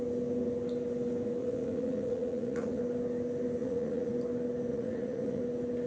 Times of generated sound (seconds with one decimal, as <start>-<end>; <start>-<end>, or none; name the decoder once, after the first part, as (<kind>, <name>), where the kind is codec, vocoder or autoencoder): 1.4-2.8 (vocoder, Vocos); 3.6-4.1; 4.7-5.4